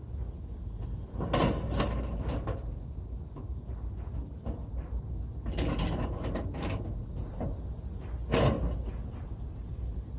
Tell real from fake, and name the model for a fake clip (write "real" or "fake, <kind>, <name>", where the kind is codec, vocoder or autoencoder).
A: real